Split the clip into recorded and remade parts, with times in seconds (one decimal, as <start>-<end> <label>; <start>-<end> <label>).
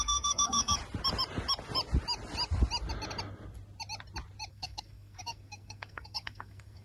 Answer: 0.0-0.8 remade; 0.8-4.5 recorded; 4.5-6.8 remade